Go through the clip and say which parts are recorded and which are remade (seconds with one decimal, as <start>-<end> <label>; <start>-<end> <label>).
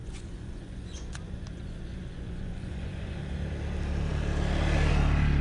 0.0-3.2 remade; 3.2-5.4 recorded